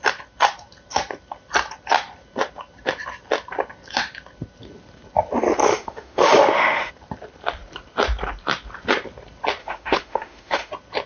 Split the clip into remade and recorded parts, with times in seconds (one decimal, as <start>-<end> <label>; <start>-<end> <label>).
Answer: 0.0-5.6 recorded; 5.6-6.9 remade; 6.9-9.6 recorded; 9.6-10.7 remade; 10.7-11.1 recorded